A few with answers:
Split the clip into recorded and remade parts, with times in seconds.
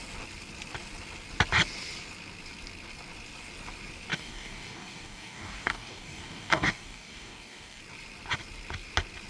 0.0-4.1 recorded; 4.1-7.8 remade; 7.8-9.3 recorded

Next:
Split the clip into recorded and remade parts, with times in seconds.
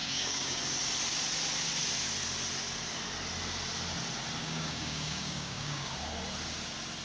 0.0-0.6 remade; 0.6-4.4 recorded; 4.4-5.9 remade; 5.9-7.0 recorded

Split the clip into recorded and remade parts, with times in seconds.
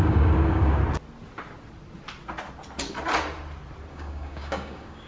0.0-0.8 remade; 0.8-3.9 recorded; 3.9-5.1 remade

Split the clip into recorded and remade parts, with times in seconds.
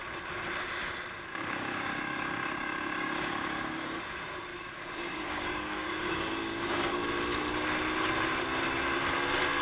0.0-1.3 recorded; 1.3-4.0 remade; 4.0-4.5 recorded; 4.5-6.9 remade; 6.9-9.6 recorded